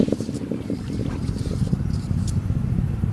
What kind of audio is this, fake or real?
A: fake